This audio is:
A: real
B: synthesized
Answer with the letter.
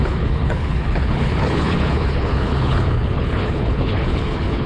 B